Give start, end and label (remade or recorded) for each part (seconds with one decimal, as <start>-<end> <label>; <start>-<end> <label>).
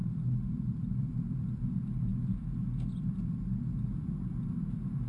0.0-1.7 remade; 1.7-5.1 recorded